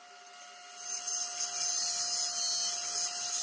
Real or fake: real